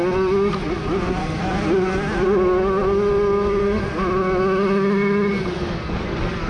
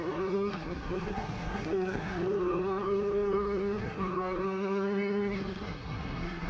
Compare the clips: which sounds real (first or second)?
first